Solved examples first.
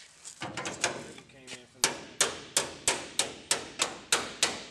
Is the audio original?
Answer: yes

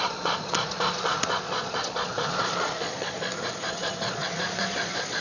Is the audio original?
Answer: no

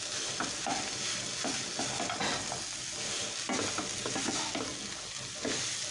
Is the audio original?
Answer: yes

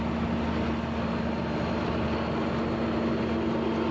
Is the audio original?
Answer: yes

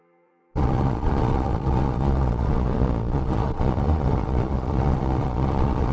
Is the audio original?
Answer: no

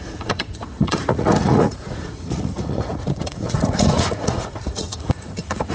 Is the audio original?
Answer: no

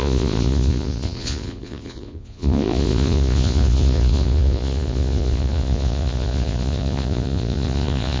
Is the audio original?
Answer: no